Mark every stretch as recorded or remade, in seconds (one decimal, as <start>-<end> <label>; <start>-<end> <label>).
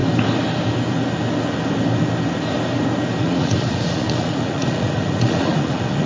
0.0-3.2 recorded; 3.2-6.1 remade